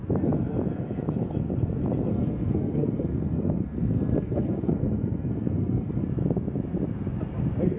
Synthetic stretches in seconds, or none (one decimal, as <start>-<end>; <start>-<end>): 2.1-6.0